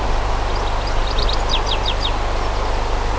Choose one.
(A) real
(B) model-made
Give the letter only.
A